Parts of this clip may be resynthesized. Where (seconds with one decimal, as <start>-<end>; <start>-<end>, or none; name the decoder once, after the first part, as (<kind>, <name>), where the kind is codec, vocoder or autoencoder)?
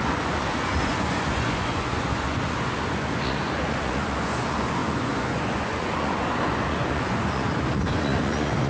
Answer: 0.0-8.7 (vocoder, Vocos)